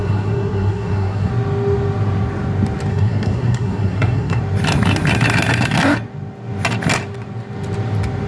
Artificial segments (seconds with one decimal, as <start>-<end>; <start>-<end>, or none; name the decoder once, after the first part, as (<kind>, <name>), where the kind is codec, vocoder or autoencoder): 0.0-1.3 (codec, SNAC); 2.9-4.4